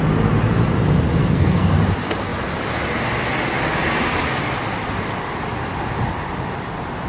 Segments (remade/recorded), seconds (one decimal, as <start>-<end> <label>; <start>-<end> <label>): 0.0-1.2 recorded; 1.2-1.8 remade; 1.8-7.1 recorded